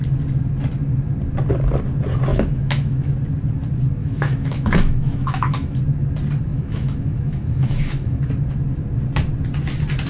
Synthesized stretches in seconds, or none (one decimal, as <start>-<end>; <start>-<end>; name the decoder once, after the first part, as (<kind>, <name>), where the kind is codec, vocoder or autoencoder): 2.3-3.1 (autoencoder, DAC-VAE); 4.0-5.8; 6.5-8.2